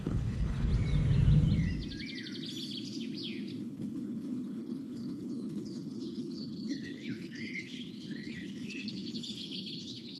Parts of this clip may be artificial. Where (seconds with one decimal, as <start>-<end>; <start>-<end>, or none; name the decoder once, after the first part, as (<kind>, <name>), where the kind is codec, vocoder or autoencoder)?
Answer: 0.0-0.7 (codec, HILCodec); 3.6-10.2